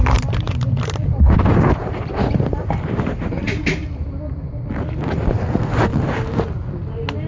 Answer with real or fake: real